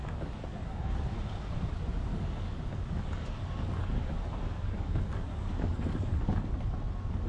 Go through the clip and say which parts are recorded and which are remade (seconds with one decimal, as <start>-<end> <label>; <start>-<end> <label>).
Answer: 0.0-1.0 remade; 1.0-2.1 recorded; 2.1-6.5 remade; 6.5-7.3 recorded